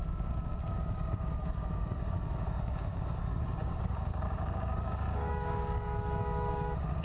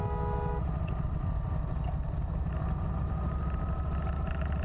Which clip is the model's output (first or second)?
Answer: first